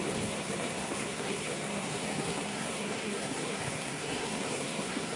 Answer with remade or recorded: remade